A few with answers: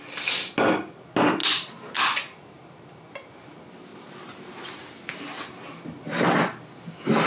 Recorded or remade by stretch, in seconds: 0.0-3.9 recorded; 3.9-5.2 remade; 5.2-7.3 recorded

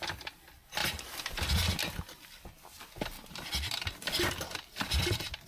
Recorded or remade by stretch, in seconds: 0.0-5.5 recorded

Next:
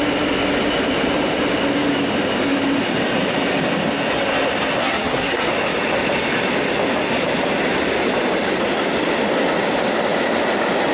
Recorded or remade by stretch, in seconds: 0.0-4.8 recorded; 4.8-5.5 remade; 5.5-10.9 recorded

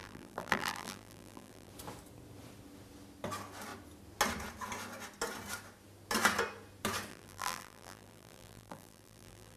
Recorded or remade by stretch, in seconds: 0.0-1.7 remade; 1.7-7.1 recorded; 7.1-9.6 remade

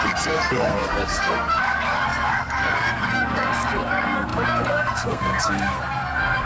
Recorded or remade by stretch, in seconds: 0.0-6.5 remade

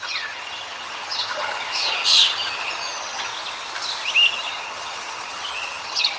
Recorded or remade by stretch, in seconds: 0.0-3.3 remade; 3.3-4.3 recorded; 4.3-6.2 remade

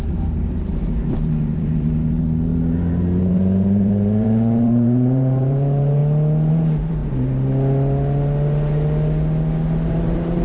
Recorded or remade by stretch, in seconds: 0.0-2.5 remade; 2.5-3.2 recorded; 3.2-6.0 remade; 6.0-6.5 recorded; 6.5-7.0 remade; 7.0-9.9 recorded; 9.9-10.4 remade

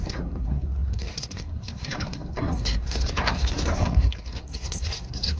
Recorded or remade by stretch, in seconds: 0.0-5.4 remade